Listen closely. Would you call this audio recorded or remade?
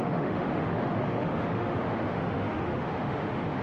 remade